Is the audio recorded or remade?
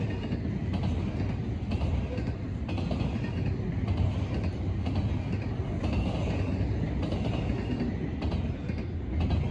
recorded